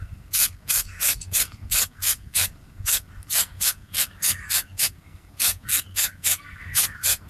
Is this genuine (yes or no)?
no